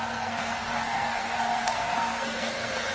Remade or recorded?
remade